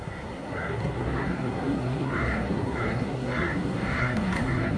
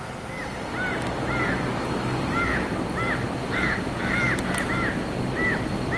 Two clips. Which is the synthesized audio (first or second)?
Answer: first